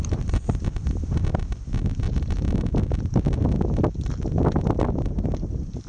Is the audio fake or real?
real